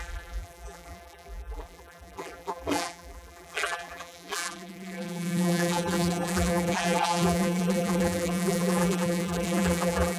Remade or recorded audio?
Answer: remade